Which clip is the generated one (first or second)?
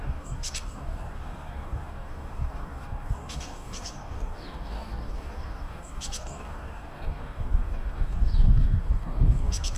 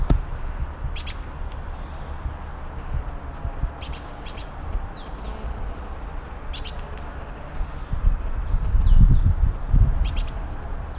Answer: first